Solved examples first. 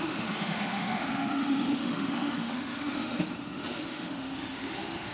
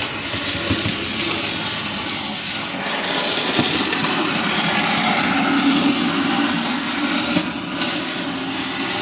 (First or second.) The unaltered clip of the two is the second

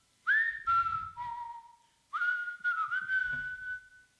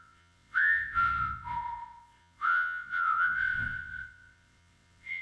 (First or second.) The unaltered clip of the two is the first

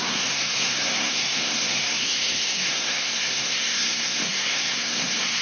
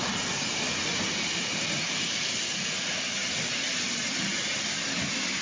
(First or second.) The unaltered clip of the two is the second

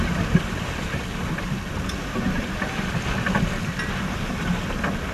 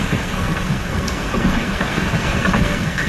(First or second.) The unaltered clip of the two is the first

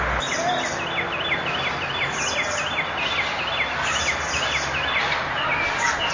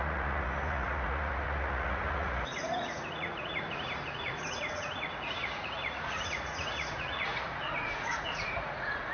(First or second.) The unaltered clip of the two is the first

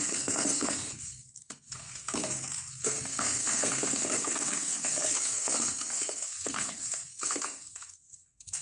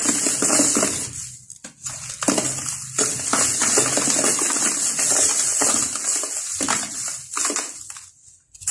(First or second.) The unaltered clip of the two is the second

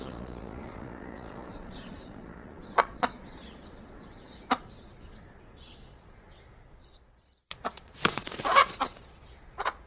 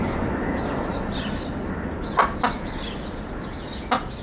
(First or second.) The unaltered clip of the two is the second